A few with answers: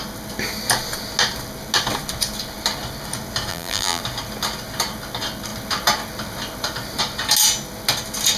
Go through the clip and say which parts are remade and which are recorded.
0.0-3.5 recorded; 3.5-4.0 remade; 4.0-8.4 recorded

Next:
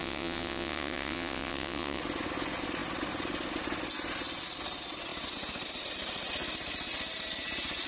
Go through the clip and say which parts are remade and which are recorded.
0.0-2.0 remade; 2.0-7.9 recorded

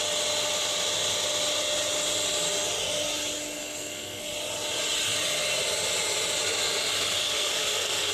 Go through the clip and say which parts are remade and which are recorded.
0.0-3.6 recorded; 3.6-4.3 remade; 4.3-7.2 recorded; 7.2-8.1 remade

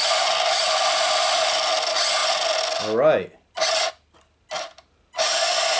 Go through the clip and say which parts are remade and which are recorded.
0.0-5.8 recorded